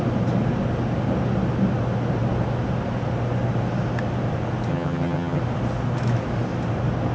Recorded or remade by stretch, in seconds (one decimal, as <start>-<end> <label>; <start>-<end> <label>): 0.0-4.7 recorded; 4.7-5.4 remade; 5.4-7.1 recorded